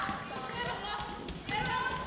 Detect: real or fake real